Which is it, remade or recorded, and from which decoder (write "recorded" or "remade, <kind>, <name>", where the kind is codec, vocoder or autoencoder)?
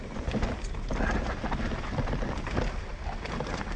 recorded